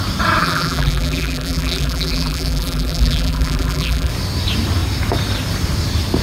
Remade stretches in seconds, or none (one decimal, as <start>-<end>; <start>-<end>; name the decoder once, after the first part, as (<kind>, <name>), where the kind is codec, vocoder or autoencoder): 0.4-4.1 (vocoder, BigVGAN v2)